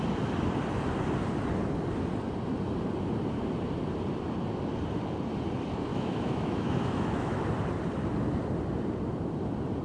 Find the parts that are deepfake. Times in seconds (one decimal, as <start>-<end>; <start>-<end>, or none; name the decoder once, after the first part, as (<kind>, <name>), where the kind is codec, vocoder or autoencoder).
5.9-7.4 (autoencoder, DAC-VAE)